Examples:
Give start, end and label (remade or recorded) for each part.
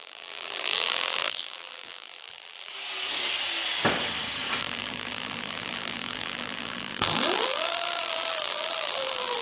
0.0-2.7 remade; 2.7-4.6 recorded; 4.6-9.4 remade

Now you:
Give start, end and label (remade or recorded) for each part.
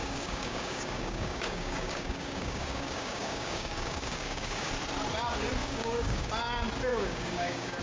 0.0-4.7 remade; 4.7-5.6 recorded; 5.6-6.3 remade; 6.3-6.9 recorded; 6.9-7.8 remade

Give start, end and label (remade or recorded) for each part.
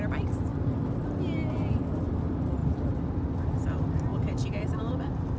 0.0-2.6 recorded; 2.6-3.4 remade; 3.4-5.4 recorded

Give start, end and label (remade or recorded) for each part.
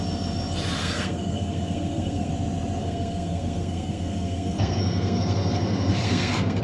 0.0-0.8 recorded; 0.8-2.3 remade; 2.3-2.8 recorded; 2.8-6.6 remade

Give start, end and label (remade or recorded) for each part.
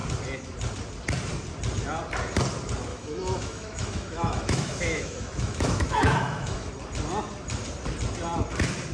0.0-2.9 recorded; 2.9-6.7 remade; 6.7-8.9 recorded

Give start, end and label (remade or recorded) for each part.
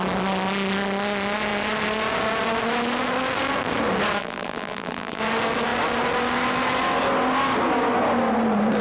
0.0-4.2 recorded; 4.2-5.2 remade; 5.2-8.8 recorded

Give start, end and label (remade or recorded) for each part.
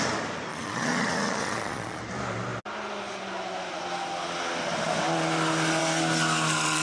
0.0-0.5 recorded; 0.5-2.0 remade; 2.0-6.8 recorded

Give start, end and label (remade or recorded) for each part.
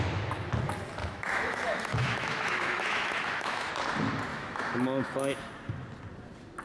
0.0-1.0 recorded; 1.0-3.7 remade; 3.7-4.3 recorded; 4.3-5.4 remade; 5.4-6.6 recorded